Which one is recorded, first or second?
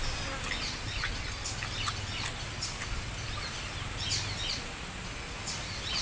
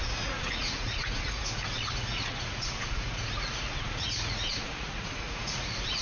first